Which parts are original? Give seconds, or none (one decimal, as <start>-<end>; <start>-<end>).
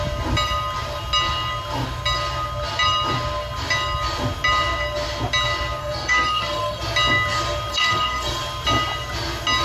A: 0.0-5.8; 6.8-7.7; 8.4-9.6